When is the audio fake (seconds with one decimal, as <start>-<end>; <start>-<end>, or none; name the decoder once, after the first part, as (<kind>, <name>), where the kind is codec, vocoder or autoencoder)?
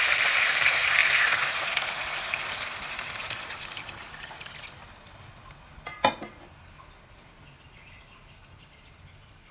none